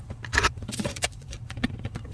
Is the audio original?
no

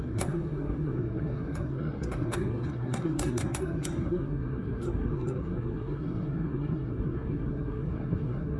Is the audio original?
no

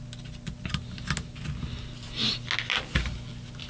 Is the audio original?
yes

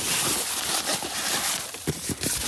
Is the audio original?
yes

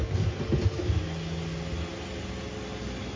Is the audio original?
yes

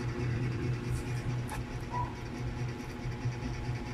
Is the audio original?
yes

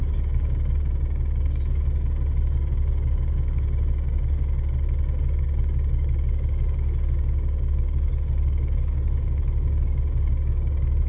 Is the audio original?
no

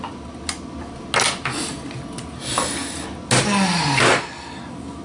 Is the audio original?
yes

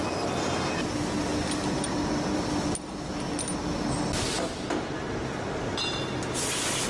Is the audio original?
yes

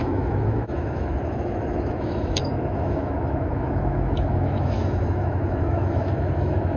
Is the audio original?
no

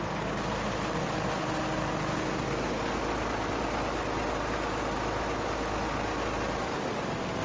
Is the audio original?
yes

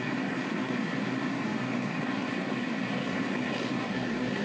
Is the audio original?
no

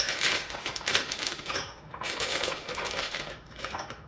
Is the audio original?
no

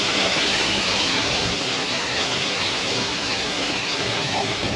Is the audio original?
no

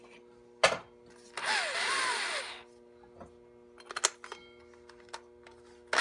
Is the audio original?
yes